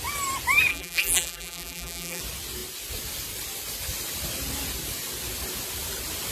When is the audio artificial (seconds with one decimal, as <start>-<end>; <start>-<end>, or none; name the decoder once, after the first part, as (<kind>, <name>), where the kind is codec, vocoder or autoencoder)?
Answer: 0.7-2.2 (vocoder, BigVGAN v2)